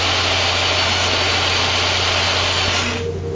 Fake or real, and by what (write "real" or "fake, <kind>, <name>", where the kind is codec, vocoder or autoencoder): real